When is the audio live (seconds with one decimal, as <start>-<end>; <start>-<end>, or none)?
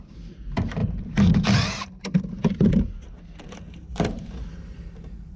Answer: 2.4-3.4